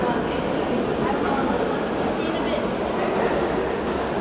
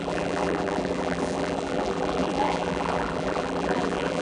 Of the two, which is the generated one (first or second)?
second